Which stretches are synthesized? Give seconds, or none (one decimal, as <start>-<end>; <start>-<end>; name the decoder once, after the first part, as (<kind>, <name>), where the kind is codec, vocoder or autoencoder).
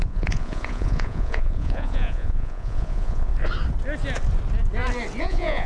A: 0.0-3.3 (vocoder, Vocos); 5.2-5.7